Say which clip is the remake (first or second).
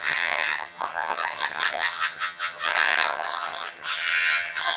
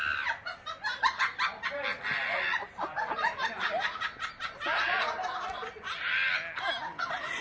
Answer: first